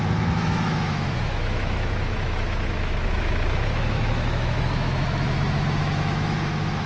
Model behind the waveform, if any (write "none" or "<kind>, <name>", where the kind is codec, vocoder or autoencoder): autoencoder, DAC-VAE